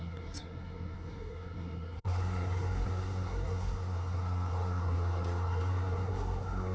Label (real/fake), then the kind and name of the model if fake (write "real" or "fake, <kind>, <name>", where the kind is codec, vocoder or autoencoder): fake, codec, SNAC